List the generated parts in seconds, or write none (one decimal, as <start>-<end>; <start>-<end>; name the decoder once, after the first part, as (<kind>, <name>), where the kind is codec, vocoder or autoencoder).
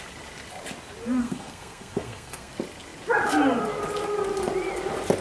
1.2-2.5 (codec, SNAC)